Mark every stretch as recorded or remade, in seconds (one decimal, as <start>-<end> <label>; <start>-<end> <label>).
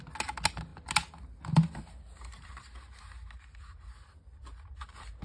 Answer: 0.0-5.2 recorded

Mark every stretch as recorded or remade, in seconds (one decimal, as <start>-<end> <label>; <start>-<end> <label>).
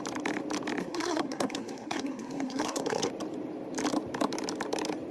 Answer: 0.0-0.8 recorded; 0.8-3.1 remade; 3.1-5.1 recorded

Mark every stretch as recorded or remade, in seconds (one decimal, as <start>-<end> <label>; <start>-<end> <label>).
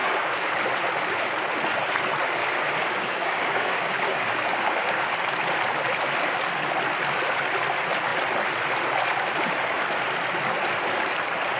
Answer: 0.0-0.5 remade; 0.5-2.4 recorded; 2.4-5.2 remade; 5.2-11.6 recorded